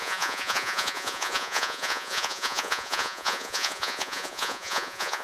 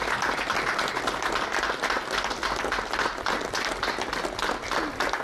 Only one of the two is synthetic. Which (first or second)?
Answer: first